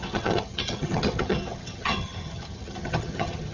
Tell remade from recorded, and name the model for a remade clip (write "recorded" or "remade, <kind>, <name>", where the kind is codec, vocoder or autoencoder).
remade, vocoder, HiFi-GAN